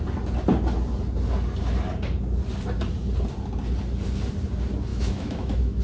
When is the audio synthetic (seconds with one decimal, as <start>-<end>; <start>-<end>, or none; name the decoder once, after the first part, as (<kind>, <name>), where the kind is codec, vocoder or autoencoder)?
4.9-5.8 (autoencoder, DAC-VAE)